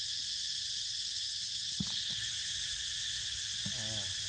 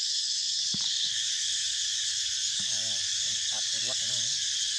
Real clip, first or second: first